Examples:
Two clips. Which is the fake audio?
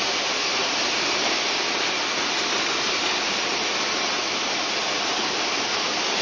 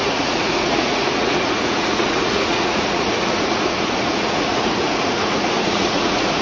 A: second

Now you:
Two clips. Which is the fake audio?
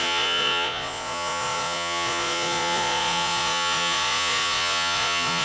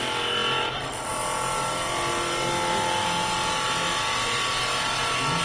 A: first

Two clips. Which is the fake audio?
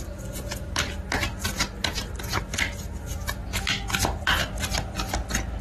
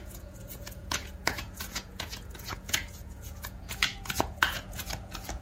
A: second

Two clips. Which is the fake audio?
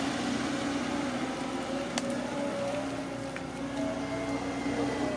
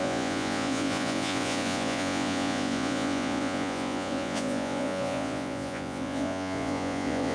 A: second